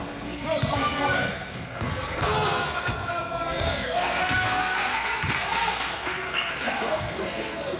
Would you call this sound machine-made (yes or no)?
yes